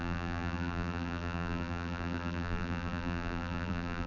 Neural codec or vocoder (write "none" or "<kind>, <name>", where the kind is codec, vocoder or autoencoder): vocoder, BigVGAN v2